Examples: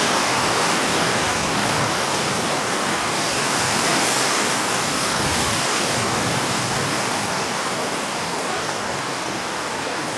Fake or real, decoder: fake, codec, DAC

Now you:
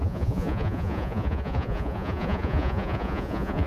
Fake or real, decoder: fake, vocoder, Vocos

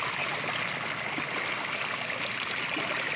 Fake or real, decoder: real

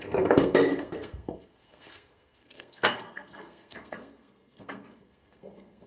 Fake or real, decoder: fake, codec, SNAC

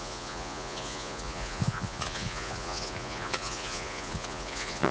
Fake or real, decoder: fake, vocoder, Vocos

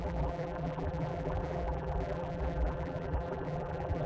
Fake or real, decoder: fake, vocoder, BigVGAN v2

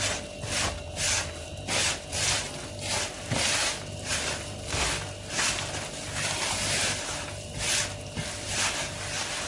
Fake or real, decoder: real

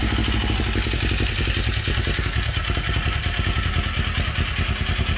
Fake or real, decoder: real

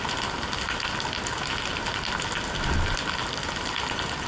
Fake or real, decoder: real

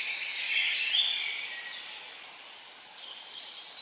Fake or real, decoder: real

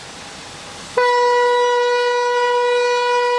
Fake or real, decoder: real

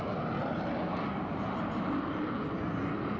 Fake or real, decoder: real